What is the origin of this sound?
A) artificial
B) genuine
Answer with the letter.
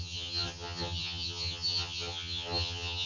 A